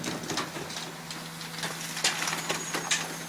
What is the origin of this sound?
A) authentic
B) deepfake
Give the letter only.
A